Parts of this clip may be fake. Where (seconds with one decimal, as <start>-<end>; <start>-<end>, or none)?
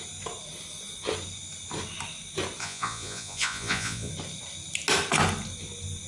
2.6-4.1